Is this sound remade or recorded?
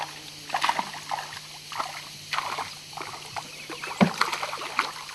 recorded